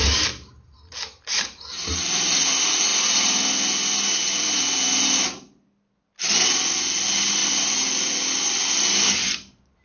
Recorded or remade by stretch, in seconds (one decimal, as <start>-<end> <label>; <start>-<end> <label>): 0.0-9.8 recorded